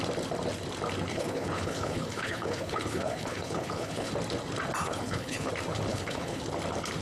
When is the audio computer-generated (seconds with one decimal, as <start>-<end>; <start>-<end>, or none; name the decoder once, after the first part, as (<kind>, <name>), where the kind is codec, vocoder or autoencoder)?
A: 1.1-4.1 (codec, HILCodec); 4.8-5.5; 5.9-6.4